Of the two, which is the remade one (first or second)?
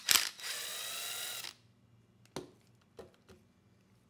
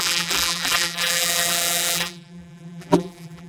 second